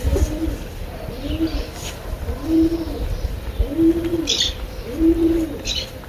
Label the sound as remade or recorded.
recorded